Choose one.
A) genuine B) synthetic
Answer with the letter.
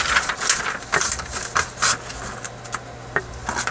A